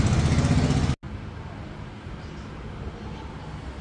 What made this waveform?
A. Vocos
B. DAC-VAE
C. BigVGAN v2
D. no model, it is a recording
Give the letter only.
D